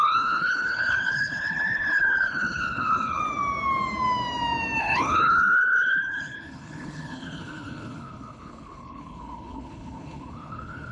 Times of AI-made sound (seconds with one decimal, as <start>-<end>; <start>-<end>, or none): 0.0-3.2; 4.8-10.9

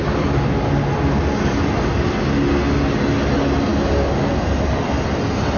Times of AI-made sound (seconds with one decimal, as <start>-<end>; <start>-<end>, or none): none

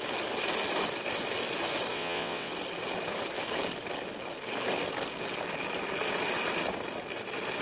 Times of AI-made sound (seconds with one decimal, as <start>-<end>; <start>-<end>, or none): 1.9-2.5

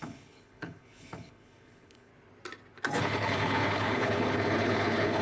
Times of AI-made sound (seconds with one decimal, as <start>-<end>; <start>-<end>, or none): 0.0-2.1; 3.0-5.2

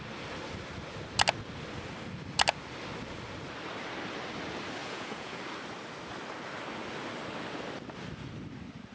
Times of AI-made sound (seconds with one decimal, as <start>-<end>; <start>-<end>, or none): 4.8-5.4

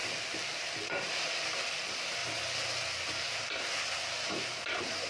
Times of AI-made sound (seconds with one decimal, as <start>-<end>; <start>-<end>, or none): 0.0-1.2